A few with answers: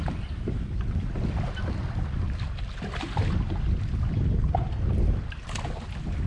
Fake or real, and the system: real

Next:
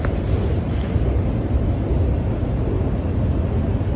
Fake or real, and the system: real